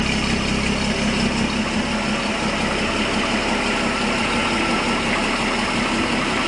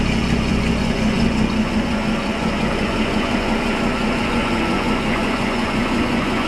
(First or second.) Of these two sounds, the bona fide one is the first